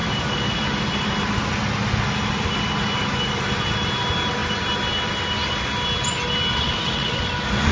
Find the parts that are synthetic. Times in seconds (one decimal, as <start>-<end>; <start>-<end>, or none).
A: 6.5-7.3